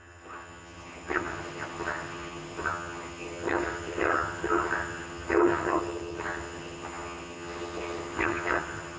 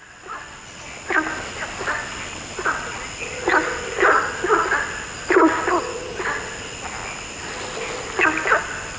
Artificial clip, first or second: first